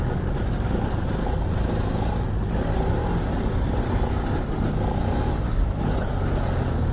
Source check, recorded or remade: recorded